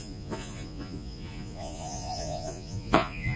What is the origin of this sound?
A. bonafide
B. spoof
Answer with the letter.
B